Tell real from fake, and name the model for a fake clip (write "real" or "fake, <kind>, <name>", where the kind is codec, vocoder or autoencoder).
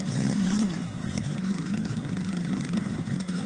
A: fake, codec, SNAC